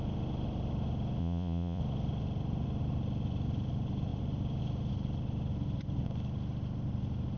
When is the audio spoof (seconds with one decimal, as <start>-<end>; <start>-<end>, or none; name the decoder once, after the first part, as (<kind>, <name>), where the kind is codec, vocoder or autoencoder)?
1.2-1.8 (vocoder, Vocos)